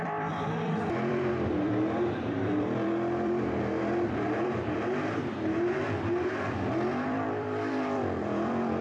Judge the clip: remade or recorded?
remade